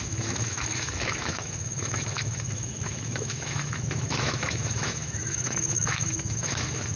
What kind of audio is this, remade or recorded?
remade